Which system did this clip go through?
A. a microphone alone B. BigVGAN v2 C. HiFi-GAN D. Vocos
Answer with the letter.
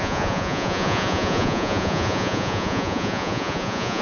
D